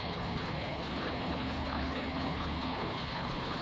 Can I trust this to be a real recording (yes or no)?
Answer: no